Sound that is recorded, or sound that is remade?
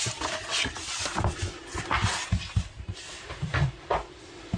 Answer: recorded